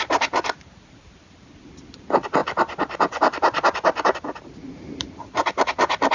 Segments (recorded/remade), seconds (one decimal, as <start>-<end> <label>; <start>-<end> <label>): 0.0-6.1 remade